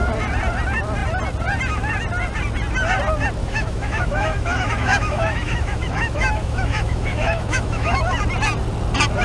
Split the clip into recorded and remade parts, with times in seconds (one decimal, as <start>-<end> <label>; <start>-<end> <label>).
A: 0.0-3.4 recorded; 3.4-8.0 remade; 8.0-9.2 recorded